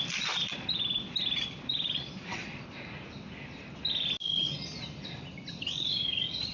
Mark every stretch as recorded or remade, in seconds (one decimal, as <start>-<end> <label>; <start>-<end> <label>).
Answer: 0.0-6.5 recorded